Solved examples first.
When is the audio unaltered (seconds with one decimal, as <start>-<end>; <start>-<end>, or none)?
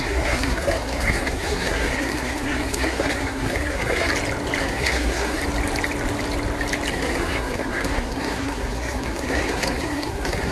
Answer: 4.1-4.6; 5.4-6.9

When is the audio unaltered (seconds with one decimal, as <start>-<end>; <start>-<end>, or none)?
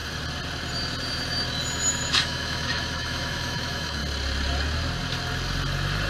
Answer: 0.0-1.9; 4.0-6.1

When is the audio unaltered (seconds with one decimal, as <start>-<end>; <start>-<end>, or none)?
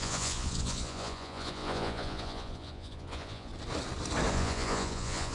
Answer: 3.5-4.3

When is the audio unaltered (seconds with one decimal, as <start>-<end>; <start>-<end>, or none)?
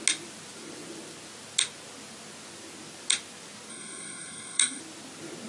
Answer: 0.0-3.7; 4.8-5.5